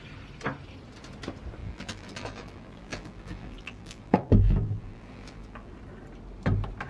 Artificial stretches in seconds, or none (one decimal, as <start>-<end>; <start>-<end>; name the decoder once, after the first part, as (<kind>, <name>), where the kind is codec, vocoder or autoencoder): 1.6-5.7 (vocoder, BigVGAN v2)

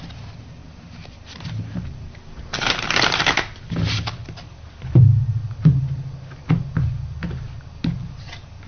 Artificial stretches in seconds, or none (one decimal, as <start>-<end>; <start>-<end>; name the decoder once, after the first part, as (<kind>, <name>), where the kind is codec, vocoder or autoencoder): 0.6-3.4 (vocoder, BigVGAN v2)